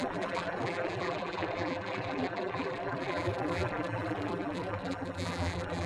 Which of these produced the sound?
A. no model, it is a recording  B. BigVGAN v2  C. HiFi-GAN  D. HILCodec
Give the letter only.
B